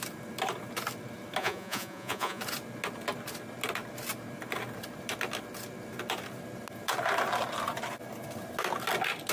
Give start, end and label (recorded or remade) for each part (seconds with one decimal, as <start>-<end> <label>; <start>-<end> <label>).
0.0-1.4 recorded; 1.4-2.4 remade; 2.4-9.3 recorded